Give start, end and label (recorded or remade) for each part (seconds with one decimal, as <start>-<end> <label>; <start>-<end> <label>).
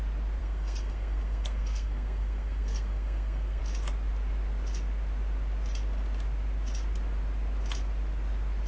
0.0-0.4 recorded; 0.4-3.6 remade; 3.6-8.7 recorded